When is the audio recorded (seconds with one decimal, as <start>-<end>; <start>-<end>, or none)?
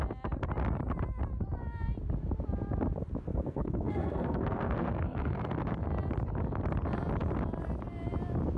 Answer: 0.0-3.3; 5.4-8.6